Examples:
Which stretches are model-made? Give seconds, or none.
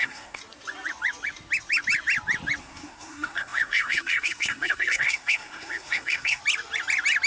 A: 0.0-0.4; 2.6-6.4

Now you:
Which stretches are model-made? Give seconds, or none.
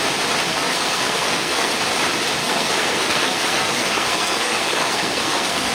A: 0.5-1.7; 2.4-5.7